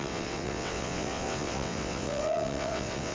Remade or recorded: remade